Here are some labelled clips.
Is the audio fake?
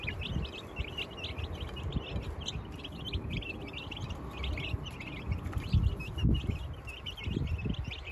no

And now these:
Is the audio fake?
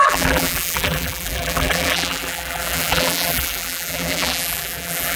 yes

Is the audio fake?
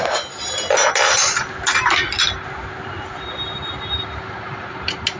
no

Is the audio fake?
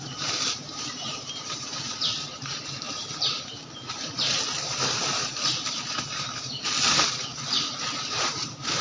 yes